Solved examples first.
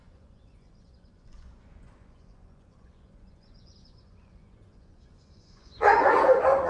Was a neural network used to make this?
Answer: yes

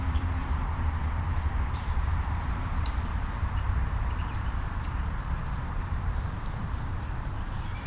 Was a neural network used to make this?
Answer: yes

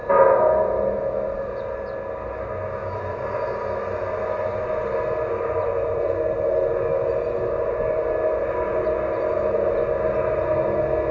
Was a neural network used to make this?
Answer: no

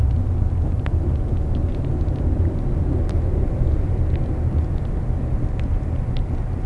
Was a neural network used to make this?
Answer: no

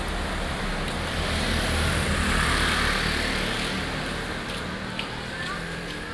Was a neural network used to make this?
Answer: no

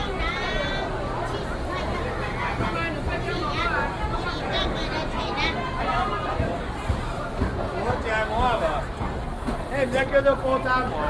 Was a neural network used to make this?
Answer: no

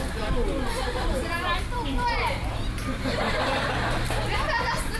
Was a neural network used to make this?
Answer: yes